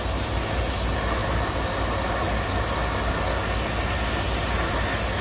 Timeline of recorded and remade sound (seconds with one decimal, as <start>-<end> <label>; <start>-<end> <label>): 0.0-5.2 recorded